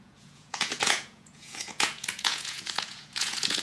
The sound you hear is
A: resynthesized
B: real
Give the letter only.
A